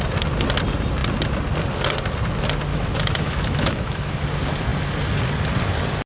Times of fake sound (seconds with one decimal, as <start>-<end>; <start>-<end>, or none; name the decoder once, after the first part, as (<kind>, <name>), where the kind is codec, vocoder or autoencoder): 2.7-4.1 (autoencoder, DAC-VAE)